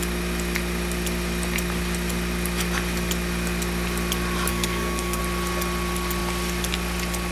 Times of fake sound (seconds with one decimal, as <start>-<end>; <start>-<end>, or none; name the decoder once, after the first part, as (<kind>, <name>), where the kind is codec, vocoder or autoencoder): 4.5-5.2 (codec, SNAC)